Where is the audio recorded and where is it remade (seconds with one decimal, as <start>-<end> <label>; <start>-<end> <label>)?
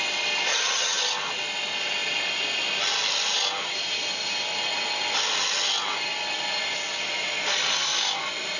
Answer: 0.0-0.5 recorded; 0.5-1.0 remade; 1.0-8.6 recorded